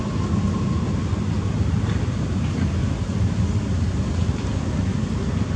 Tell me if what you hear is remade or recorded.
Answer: recorded